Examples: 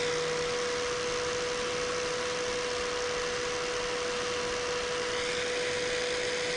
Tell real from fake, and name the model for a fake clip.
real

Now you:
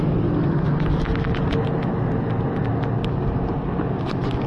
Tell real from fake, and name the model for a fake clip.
real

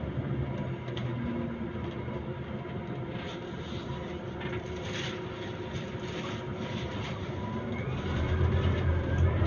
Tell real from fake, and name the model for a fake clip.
real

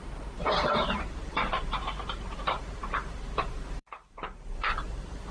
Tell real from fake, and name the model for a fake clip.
fake, vocoder, BigVGAN v2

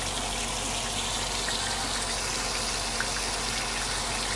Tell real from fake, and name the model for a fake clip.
real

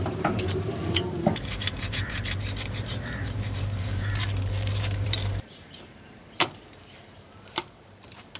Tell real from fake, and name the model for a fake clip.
fake, vocoder, BigVGAN v2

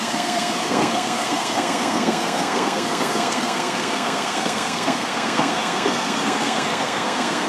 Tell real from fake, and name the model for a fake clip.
fake, codec, SNAC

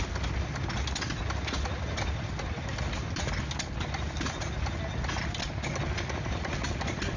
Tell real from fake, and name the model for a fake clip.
real